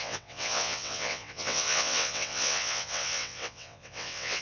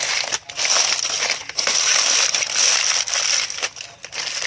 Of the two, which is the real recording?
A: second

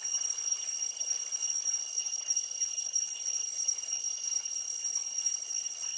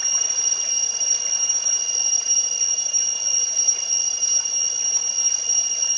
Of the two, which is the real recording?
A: second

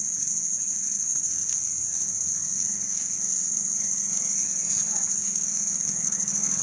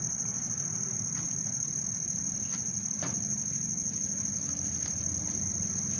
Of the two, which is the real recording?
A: second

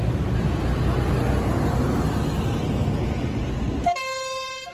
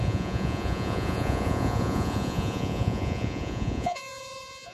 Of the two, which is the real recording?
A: first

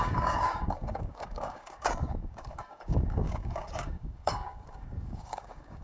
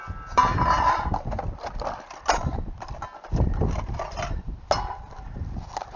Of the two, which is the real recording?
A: second